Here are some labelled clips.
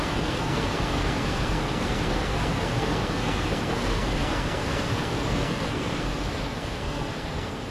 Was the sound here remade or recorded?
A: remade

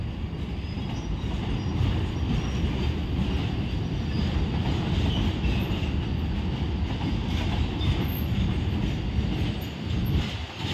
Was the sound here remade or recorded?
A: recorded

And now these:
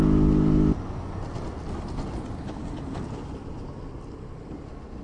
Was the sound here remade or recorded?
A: recorded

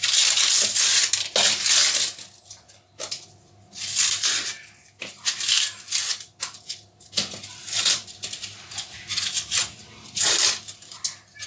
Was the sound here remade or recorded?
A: recorded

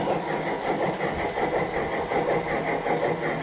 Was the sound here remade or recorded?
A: recorded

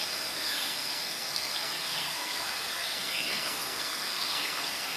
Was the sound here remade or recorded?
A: remade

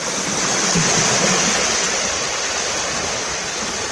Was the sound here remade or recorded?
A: recorded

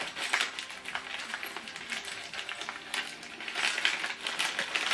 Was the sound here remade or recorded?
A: recorded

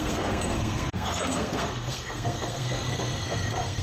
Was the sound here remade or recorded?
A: remade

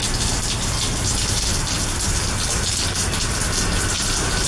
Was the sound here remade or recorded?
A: recorded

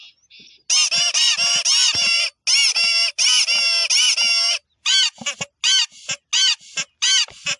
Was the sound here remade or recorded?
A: recorded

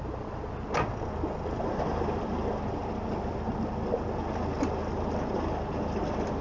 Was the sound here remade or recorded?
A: recorded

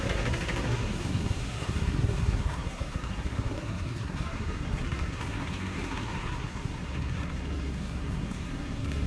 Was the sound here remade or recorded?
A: remade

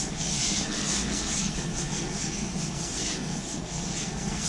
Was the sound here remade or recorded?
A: remade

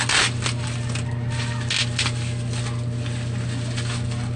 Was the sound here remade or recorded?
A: recorded